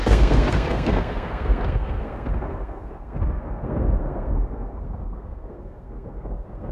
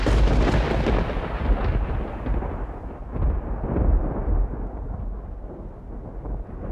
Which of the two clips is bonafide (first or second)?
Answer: second